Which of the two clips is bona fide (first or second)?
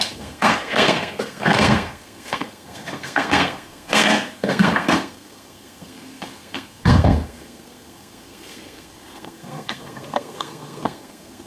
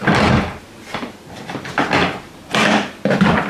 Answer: second